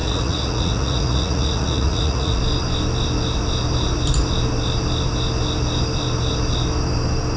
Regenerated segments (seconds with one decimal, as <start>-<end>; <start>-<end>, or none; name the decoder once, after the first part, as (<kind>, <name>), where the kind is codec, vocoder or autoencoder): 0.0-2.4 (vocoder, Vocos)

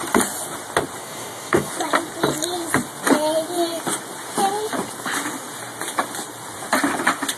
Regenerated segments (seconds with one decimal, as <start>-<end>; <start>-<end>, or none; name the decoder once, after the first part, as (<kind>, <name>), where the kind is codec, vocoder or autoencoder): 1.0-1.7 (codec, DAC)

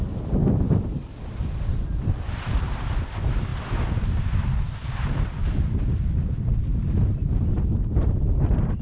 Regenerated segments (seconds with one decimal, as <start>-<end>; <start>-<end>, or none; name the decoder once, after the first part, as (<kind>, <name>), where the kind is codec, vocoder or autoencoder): 0.0-3.5 (vocoder, BigVGAN v2); 4.3-6.7; 7.9-8.8

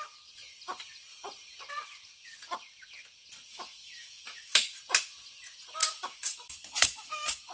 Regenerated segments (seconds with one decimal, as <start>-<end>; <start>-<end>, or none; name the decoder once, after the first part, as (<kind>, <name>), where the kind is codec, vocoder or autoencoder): 3.5-4.8 (autoencoder, DAC-VAE); 5.8-7.5

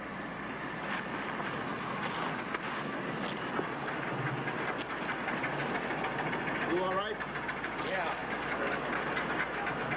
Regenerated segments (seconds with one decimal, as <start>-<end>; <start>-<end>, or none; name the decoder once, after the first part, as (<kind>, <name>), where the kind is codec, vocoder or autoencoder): none

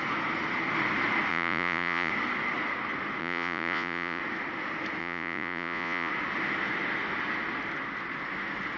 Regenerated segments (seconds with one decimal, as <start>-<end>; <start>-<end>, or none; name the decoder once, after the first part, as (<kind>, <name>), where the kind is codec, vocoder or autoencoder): 1.3-2.1 (vocoder, Vocos); 3.2-4.2; 5.0-6.1